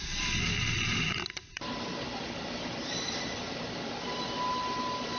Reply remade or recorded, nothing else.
remade